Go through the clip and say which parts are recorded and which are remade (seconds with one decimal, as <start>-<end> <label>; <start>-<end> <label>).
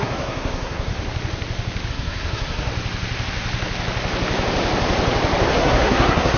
0.0-0.9 remade; 0.9-1.9 recorded; 1.9-2.7 remade; 2.7-5.5 recorded; 5.5-6.4 remade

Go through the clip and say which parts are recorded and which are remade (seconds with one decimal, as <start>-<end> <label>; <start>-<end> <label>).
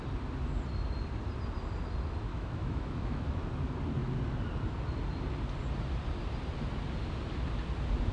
0.0-2.3 recorded; 2.3-3.5 remade; 3.5-8.1 recorded